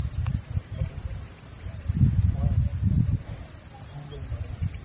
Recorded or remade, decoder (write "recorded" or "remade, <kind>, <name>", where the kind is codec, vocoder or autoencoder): remade, vocoder, BigVGAN v2